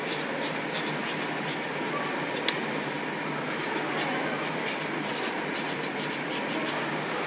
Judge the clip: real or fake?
real